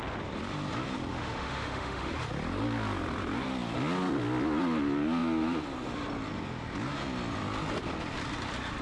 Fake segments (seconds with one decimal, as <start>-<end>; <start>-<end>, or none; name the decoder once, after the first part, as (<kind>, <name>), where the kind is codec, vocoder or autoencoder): 1.1-2.1 (autoencoder, DAC-VAE)